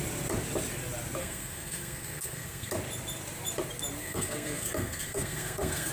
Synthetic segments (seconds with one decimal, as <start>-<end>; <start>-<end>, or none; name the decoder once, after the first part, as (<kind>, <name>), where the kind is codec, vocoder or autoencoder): 1.2-2.7 (codec, SNAC); 4.0-5.9